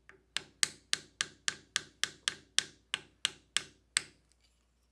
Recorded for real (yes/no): yes